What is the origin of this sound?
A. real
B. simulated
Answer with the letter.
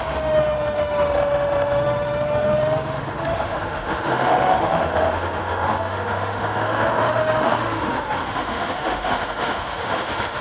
B